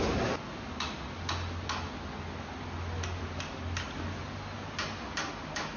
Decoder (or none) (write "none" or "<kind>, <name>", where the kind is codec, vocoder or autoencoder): none